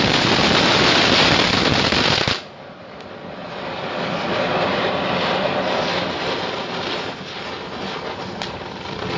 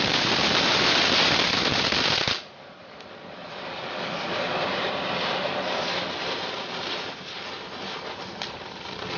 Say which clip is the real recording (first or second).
first